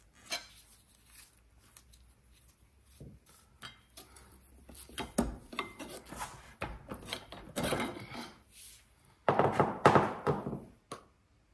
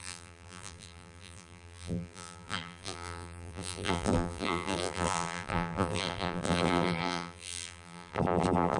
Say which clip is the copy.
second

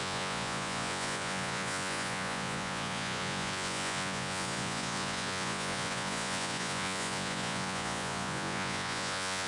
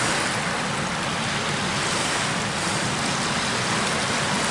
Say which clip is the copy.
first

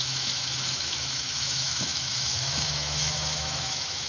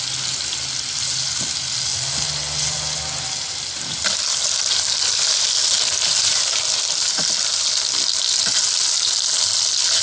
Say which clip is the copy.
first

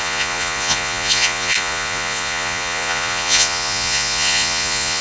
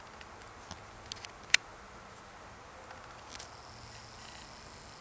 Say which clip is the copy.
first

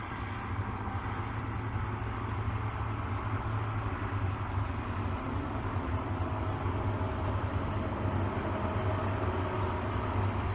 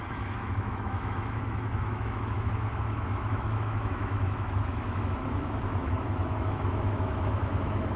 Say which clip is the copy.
second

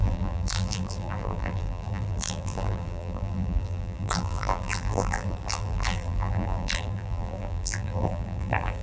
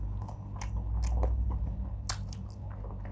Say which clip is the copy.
first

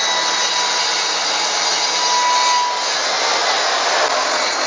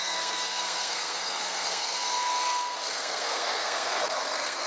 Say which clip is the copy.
second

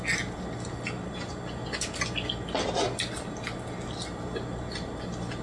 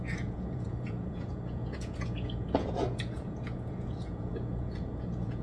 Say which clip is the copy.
second